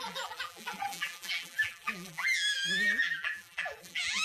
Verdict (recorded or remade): remade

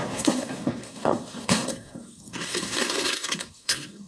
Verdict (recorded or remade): remade